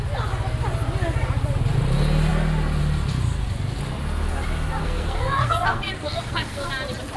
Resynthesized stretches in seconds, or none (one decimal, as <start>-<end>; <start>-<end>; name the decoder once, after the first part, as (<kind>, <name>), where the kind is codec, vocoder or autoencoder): 4.8-6.7 (codec, SNAC)